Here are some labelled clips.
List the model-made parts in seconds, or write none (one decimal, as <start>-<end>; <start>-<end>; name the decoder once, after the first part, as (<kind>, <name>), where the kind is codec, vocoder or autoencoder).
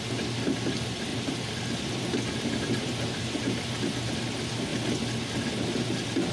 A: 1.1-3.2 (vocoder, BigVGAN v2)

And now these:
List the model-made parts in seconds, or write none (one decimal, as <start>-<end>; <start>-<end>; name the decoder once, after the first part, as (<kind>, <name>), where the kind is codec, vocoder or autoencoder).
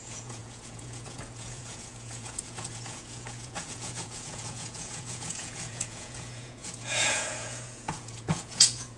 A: 0.0-9.0 (vocoder, Vocos)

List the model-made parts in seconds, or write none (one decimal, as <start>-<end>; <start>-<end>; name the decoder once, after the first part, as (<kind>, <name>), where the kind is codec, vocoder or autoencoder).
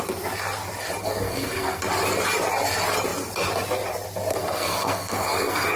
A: 1.0-1.8 (codec, SNAC); 4.3-5.8